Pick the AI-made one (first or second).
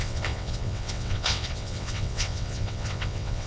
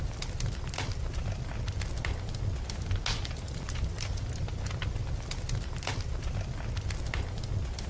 first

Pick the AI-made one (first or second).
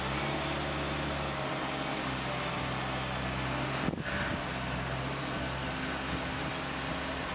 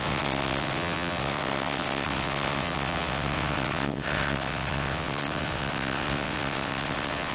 second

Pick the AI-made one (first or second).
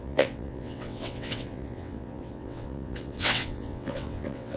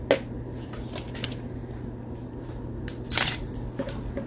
first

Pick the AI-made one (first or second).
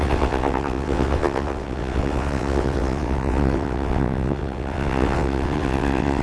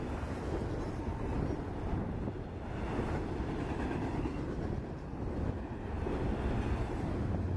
first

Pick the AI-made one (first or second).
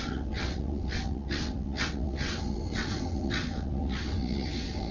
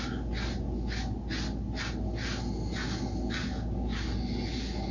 first